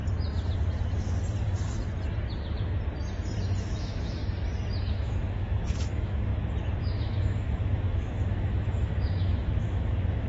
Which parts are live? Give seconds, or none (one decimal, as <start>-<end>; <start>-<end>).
0.0-3.6; 4.2-4.8; 6.3-6.8